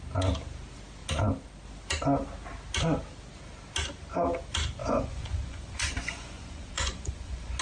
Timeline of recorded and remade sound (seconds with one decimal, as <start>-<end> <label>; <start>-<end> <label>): 0.0-4.8 recorded; 4.8-7.6 remade